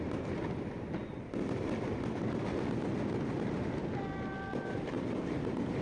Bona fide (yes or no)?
yes